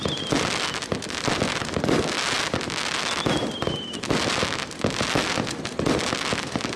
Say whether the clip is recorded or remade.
recorded